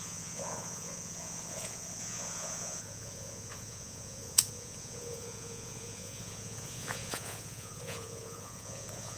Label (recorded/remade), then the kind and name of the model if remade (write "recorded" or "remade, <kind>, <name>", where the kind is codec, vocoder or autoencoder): remade, vocoder, Vocos